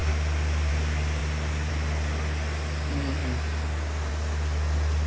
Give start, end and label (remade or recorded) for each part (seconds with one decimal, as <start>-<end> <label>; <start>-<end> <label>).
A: 0.0-5.1 recorded

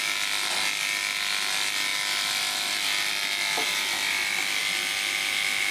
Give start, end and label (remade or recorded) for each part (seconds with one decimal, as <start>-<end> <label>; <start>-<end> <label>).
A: 0.0-5.7 recorded

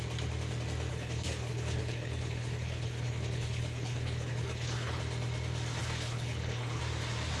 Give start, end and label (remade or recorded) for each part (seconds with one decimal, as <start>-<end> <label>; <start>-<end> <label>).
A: 0.0-0.9 recorded; 0.9-5.0 remade; 5.0-5.8 recorded; 5.8-6.8 remade; 6.8-7.4 recorded

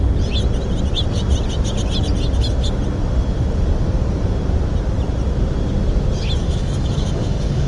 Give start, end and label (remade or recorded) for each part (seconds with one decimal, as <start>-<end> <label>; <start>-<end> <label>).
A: 0.0-6.4 recorded; 6.4-7.7 remade